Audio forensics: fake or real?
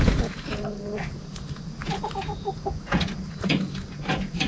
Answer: fake